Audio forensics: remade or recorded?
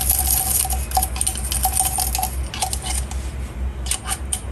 recorded